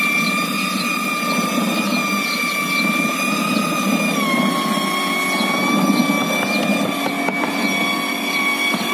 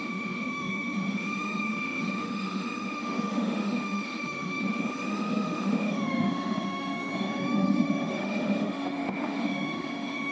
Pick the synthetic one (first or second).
second